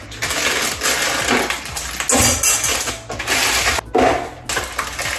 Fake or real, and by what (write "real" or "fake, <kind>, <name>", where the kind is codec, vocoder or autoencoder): real